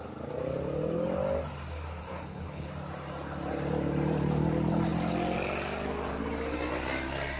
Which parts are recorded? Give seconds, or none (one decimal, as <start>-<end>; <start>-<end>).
0.0-2.0; 2.7-7.4